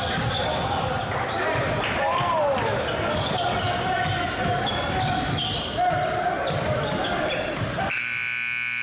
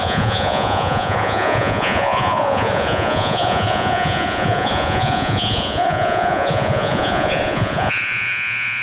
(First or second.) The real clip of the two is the first